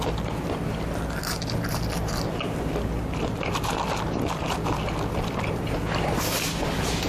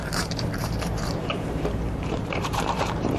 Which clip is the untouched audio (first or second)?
first